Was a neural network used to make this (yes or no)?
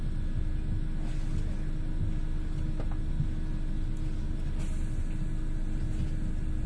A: no